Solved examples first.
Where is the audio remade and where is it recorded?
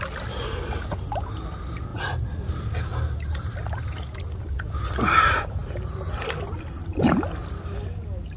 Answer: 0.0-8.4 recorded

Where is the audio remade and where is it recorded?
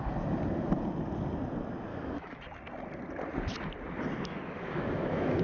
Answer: 0.0-1.9 recorded; 1.9-2.4 remade; 2.4-4.3 recorded; 4.3-5.4 remade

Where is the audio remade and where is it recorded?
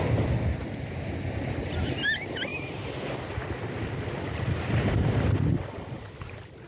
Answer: 0.0-2.5 recorded; 2.5-6.1 remade; 6.1-6.7 recorded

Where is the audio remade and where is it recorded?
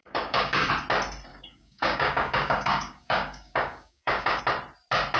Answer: 0.0-0.7 remade; 0.7-1.3 recorded; 1.3-4.4 remade; 4.4-5.2 recorded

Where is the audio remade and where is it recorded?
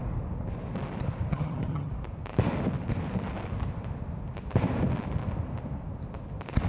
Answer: 0.0-1.3 recorded; 1.3-1.9 remade; 1.9-6.7 recorded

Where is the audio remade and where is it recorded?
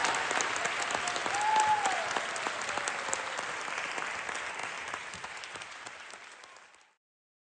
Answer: 0.0-0.5 remade; 0.5-4.6 recorded; 4.6-6.1 remade; 6.1-7.5 recorded